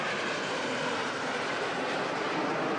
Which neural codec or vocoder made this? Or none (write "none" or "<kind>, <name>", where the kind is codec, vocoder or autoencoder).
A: none